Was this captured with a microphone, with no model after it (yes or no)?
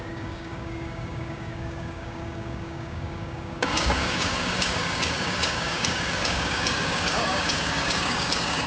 no